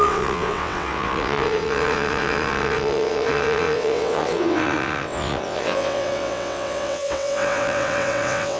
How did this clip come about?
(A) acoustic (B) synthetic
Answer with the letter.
B